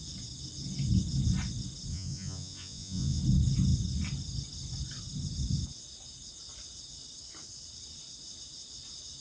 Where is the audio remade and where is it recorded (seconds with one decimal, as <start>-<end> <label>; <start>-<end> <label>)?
0.0-1.9 recorded; 1.9-3.2 remade; 3.2-9.2 recorded